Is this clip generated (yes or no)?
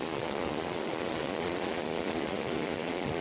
yes